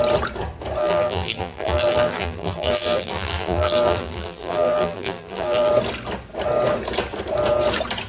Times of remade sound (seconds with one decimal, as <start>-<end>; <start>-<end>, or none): 0.8-5.7